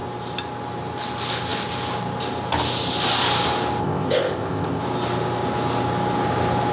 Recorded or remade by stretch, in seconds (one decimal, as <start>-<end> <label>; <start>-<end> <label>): 0.0-3.8 recorded; 3.8-4.8 remade; 4.8-6.7 recorded